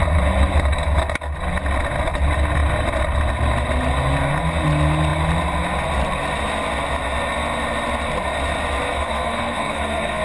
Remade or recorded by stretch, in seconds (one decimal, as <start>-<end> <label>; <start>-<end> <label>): 0.0-8.9 recorded; 8.9-10.2 remade